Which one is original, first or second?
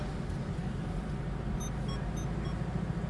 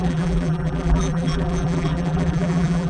first